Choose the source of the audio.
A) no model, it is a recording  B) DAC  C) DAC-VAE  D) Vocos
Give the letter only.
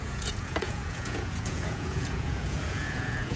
D